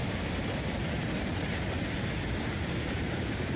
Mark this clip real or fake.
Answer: real